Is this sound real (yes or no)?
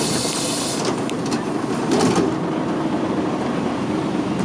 yes